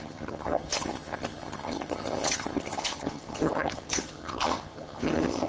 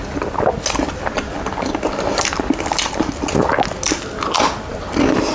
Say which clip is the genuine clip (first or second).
second